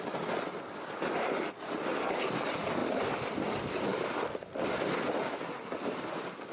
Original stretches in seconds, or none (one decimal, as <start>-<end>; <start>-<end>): 0.0-6.5